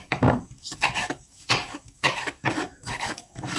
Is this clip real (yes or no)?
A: no